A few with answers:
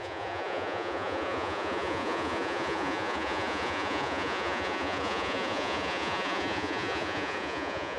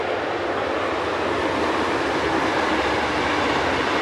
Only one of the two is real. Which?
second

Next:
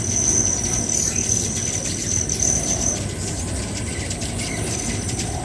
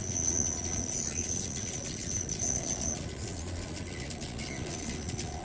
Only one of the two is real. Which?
first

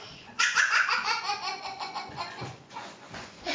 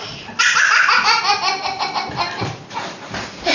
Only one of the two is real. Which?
second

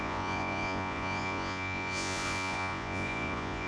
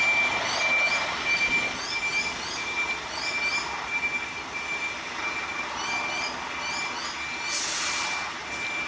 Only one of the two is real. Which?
second